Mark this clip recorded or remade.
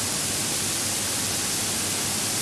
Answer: recorded